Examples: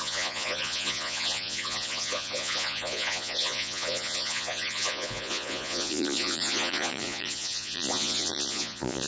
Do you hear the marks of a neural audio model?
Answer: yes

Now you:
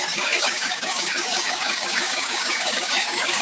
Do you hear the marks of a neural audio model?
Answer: yes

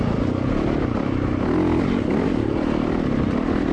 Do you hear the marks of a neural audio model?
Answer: no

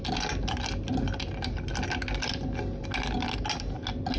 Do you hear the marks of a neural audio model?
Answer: no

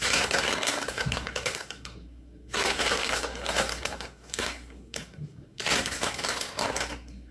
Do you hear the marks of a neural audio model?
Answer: yes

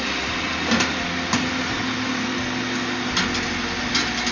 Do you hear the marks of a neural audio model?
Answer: no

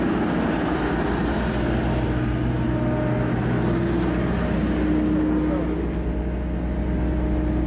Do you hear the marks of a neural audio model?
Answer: no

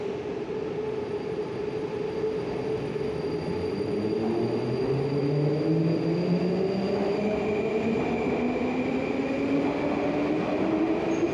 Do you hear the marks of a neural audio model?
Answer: no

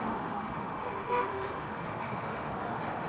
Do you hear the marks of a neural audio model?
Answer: yes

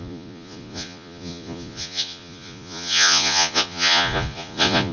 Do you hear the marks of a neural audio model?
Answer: yes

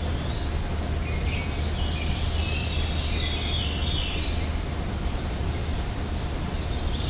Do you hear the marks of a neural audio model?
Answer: no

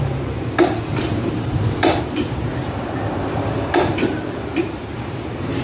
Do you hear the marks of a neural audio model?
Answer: yes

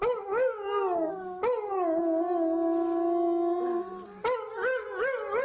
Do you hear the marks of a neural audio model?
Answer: no